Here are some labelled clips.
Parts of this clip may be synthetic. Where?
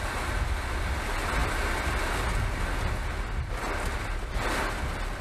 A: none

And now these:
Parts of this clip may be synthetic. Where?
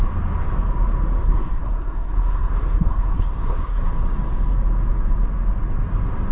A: 1.2-3.9 (codec, SNAC)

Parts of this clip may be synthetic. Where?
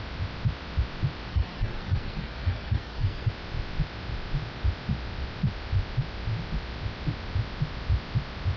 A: 1.3-3.3 (codec, SNAC)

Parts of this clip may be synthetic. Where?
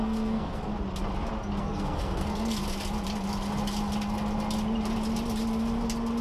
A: 0.0-0.7 (codec, SNAC); 1.6-2.6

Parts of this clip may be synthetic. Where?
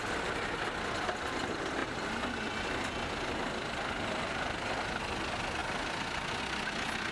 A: none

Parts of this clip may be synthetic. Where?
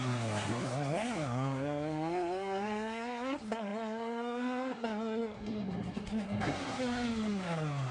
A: 0.0-7.9 (codec, SNAC)